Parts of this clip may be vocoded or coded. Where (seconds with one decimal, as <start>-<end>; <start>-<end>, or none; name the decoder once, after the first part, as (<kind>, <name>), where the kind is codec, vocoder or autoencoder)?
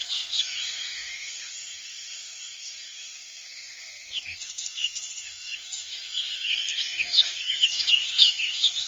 0.0-8.9 (codec, DAC)